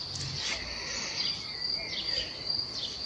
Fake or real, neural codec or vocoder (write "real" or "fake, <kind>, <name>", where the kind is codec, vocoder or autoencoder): real